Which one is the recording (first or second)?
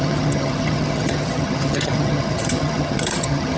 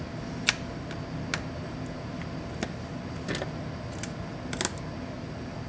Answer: second